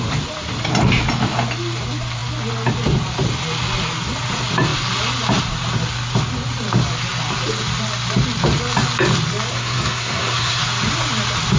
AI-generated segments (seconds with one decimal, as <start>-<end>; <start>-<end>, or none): 9.5-10.6